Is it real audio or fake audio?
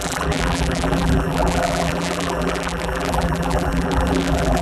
fake